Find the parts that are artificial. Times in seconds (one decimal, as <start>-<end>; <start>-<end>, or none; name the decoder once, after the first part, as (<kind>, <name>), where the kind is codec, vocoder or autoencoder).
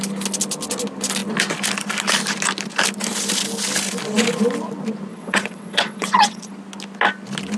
5.1-6.5 (vocoder, WaveNeXt)